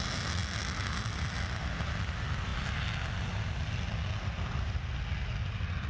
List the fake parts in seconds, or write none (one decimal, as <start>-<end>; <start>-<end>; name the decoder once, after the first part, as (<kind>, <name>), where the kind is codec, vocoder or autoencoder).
none